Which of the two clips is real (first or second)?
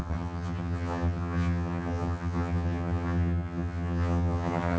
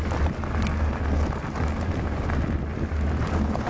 second